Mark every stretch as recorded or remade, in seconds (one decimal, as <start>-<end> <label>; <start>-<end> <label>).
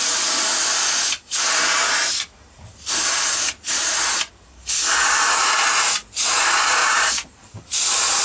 0.0-6.8 recorded; 6.8-7.7 remade; 7.7-8.2 recorded